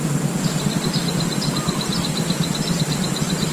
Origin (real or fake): real